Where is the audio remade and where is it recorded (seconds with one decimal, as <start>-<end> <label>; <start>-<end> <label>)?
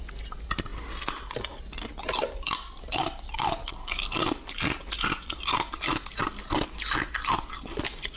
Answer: 0.0-8.2 recorded